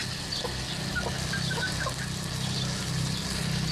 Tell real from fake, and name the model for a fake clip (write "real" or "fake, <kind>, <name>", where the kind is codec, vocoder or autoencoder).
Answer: real